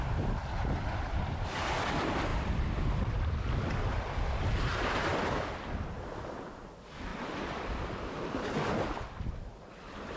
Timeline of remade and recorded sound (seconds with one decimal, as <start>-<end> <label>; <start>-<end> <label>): 0.0-2.3 recorded; 2.3-4.5 remade; 4.5-5.1 recorded; 5.1-5.9 remade; 5.9-7.1 recorded; 7.1-8.1 remade; 8.1-10.2 recorded